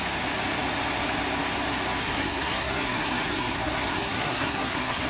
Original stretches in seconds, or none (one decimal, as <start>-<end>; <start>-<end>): 0.0-2.0